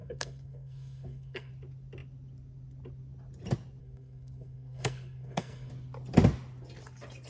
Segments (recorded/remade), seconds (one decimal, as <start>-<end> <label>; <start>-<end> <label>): 0.0-1.5 remade; 1.5-3.8 recorded; 3.8-5.7 remade; 5.7-7.3 recorded